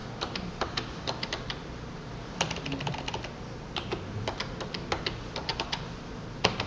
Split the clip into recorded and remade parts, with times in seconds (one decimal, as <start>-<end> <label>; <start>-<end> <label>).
0.0-2.9 remade; 2.9-5.5 recorded; 5.5-6.2 remade; 6.2-6.7 recorded